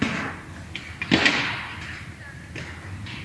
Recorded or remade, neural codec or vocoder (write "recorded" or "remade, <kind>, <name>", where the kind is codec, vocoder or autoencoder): recorded